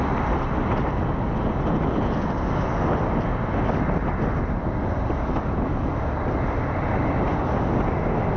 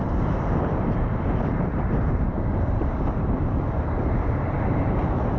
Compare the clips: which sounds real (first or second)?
first